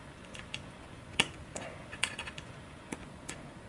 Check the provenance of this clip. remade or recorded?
remade